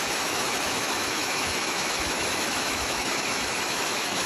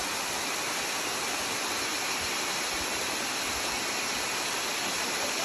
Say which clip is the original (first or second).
second